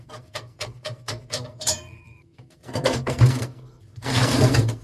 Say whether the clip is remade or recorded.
remade